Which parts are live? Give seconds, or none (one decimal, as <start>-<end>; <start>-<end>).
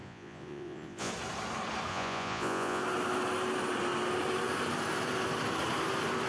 1.1-1.9; 2.8-6.3